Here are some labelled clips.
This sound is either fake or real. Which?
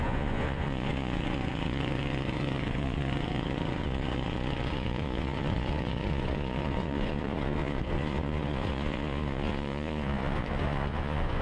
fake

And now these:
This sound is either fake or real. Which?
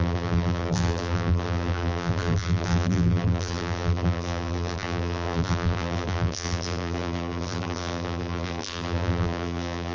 fake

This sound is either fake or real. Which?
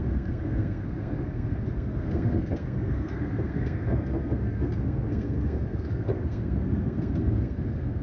fake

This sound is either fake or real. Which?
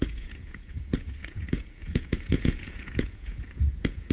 fake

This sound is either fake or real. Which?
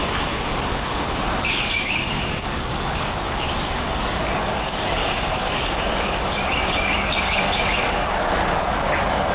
fake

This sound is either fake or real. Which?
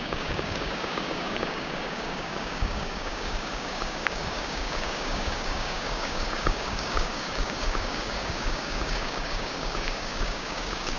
fake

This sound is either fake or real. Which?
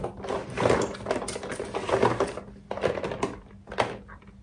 real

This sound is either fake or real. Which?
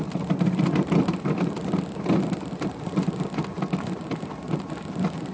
real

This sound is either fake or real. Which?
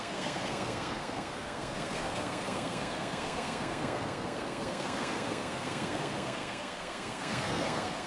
fake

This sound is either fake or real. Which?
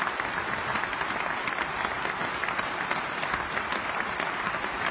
real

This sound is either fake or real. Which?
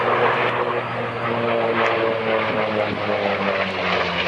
real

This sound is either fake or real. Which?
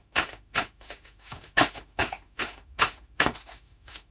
fake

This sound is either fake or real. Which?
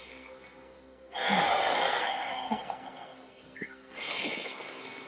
fake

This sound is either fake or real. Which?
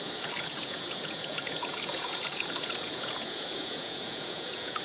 fake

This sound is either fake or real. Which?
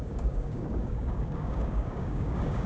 fake